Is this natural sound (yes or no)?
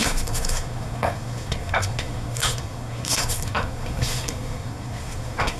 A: no